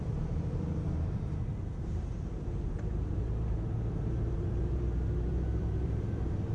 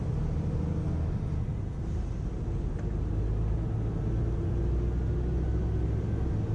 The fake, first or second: first